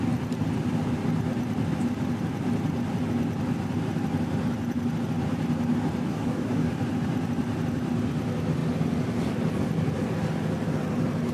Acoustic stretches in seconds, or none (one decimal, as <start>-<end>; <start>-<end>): 0.0-6.1; 6.7-11.3